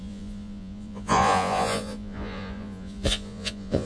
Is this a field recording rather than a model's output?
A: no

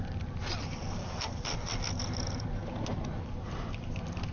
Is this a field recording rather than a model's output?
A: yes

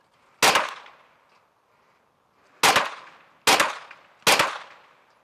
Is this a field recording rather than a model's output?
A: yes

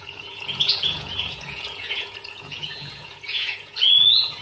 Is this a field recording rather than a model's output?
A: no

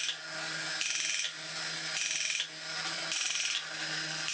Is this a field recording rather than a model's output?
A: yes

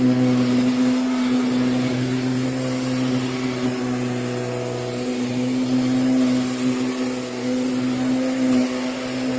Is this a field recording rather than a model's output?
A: yes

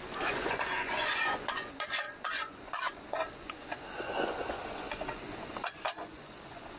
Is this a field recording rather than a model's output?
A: no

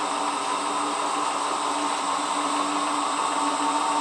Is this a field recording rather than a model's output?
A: yes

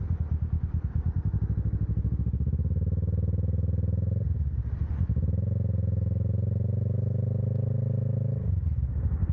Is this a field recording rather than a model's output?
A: yes